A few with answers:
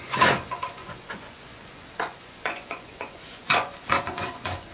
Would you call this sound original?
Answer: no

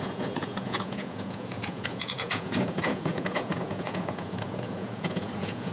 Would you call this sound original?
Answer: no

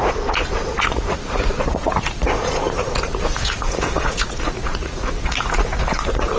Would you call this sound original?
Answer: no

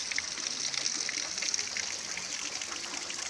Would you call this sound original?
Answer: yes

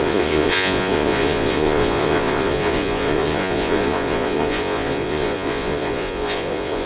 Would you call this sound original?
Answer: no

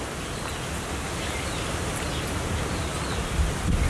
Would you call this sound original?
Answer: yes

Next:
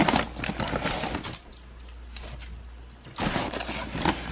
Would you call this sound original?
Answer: yes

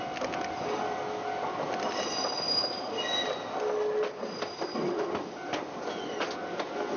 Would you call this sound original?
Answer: yes